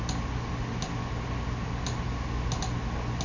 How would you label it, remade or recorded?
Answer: recorded